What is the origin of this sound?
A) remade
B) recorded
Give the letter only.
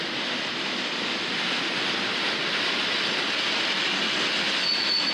B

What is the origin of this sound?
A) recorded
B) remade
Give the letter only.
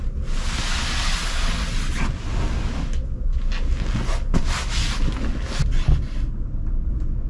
A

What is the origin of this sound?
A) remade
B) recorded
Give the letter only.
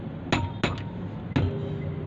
B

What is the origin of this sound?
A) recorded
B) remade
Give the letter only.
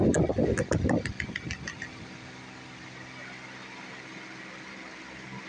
A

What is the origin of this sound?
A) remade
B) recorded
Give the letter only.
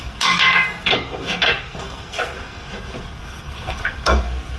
A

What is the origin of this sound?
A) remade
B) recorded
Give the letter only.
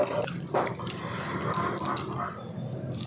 B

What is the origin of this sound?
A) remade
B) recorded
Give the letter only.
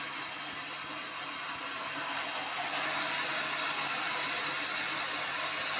B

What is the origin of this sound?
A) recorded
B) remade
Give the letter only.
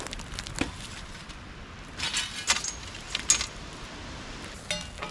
A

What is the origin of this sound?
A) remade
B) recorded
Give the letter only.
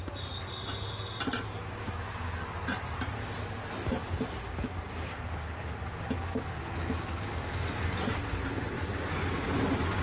B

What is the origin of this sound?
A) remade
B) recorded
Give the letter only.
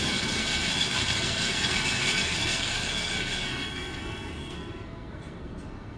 A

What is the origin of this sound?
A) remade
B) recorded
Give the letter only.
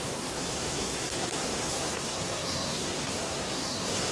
A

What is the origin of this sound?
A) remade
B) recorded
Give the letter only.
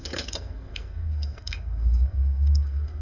A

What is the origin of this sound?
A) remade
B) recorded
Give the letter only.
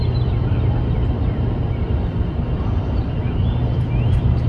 B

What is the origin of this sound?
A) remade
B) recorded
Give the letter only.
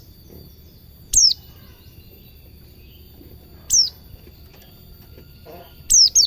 B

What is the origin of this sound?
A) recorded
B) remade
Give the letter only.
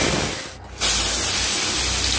A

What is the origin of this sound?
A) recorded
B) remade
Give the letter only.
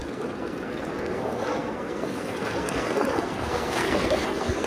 B